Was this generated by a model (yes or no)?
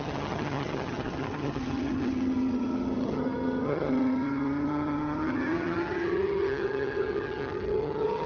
yes